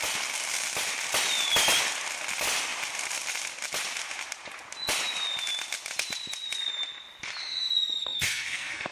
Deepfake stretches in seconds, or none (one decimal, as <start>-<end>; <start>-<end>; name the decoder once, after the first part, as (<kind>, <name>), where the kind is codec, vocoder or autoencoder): 8.0-8.9 (codec, SNAC)